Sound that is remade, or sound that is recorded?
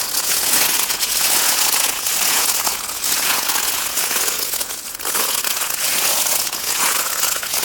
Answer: remade